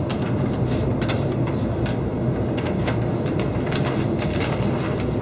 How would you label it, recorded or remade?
recorded